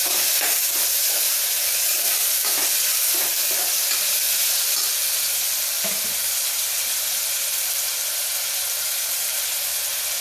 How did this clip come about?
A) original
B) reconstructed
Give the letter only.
A